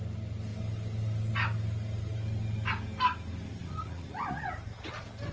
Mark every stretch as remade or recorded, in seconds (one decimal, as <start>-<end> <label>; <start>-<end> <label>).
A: 0.0-3.6 recorded; 3.6-4.5 remade; 4.5-5.3 recorded